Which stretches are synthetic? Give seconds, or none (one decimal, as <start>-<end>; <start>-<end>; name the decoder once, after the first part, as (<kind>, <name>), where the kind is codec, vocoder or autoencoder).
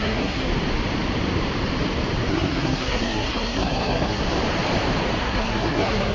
0.0-0.5 (codec, SNAC); 2.3-4.2; 5.2-6.1